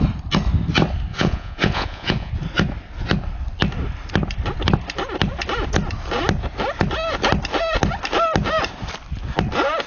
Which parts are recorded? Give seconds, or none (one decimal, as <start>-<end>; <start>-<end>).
0.0-1.1; 2.3-9.9